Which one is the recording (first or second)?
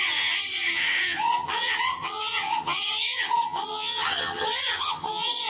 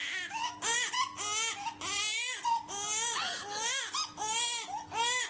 second